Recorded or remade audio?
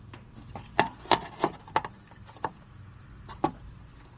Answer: recorded